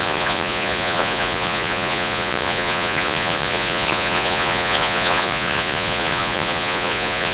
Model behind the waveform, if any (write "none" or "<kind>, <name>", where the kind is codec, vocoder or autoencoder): vocoder, Vocos